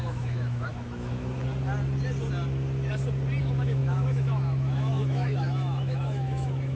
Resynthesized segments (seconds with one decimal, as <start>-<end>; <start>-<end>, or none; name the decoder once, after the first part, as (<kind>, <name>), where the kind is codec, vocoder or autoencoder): 0.0-1.4 (autoencoder, DAC-VAE); 3.4-6.8